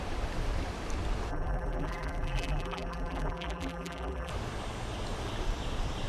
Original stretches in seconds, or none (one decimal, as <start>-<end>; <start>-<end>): 0.0-1.3; 4.3-6.1